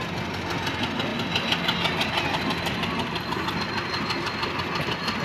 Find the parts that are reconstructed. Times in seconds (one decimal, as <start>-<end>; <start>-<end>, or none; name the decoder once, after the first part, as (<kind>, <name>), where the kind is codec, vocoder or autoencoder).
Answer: none